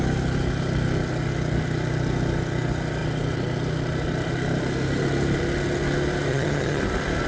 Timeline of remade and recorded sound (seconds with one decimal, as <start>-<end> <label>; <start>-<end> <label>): 0.0-6.3 recorded; 6.3-6.8 remade; 6.8-7.3 recorded